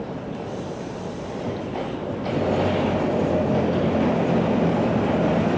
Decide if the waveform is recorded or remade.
recorded